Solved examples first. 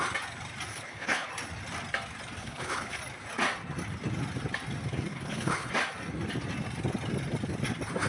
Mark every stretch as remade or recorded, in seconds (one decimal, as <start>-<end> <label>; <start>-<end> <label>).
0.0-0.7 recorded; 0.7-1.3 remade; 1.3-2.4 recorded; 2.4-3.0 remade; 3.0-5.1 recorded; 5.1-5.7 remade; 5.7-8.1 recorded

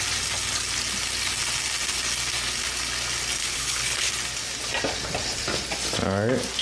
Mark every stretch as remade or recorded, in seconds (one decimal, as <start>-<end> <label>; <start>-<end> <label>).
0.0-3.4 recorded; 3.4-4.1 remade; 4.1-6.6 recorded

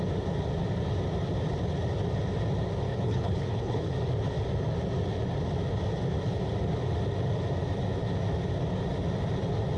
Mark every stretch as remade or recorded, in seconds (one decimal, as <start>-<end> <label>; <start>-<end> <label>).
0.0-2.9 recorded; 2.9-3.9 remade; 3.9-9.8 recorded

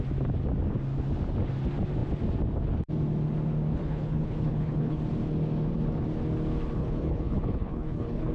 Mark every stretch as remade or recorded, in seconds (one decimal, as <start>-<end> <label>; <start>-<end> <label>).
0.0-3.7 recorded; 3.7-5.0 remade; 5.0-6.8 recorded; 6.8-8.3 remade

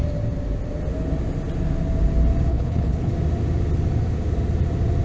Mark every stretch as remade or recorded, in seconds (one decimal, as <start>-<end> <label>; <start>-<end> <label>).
0.0-2.5 recorded; 2.5-3.1 remade; 3.1-5.0 recorded

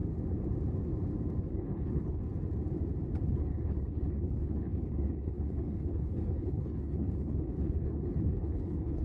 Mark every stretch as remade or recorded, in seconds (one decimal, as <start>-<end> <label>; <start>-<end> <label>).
0.0-1.4 recorded; 1.4-2.2 remade; 2.2-3.2 recorded; 3.2-9.0 remade

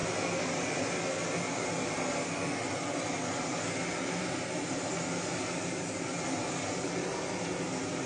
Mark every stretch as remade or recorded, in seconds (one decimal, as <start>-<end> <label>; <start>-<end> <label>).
0.0-8.1 recorded

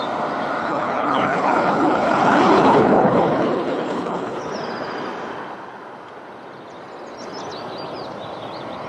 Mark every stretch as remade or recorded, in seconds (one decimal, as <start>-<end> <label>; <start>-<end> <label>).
0.0-0.6 recorded; 0.6-4.5 remade; 4.5-8.9 recorded